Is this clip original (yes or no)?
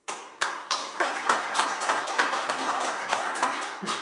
no